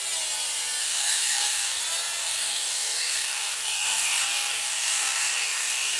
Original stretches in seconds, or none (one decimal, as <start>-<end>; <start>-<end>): 0.0-0.8; 1.8-2.2

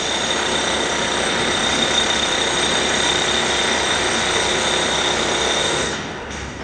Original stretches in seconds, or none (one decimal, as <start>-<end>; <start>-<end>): 0.0-5.6

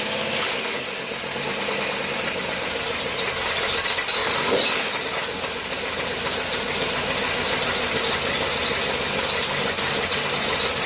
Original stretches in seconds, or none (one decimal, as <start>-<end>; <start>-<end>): 0.0-10.9

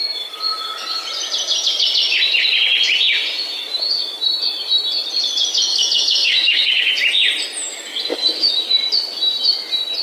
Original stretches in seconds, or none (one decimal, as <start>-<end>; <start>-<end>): 0.0-5.7; 6.9-8.1; 8.7-10.0

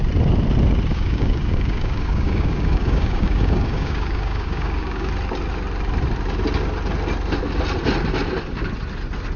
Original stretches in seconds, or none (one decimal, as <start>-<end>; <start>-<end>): 0.0-0.9; 5.1-9.4

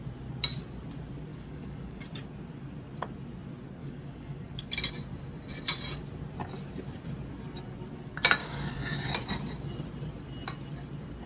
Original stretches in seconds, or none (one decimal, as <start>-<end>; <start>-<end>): 0.0-1.3; 2.0-3.8; 4.5-8.4; 9.1-11.3

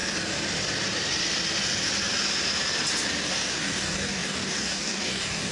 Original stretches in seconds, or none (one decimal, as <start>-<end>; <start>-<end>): 0.0-3.3